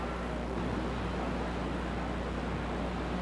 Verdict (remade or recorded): recorded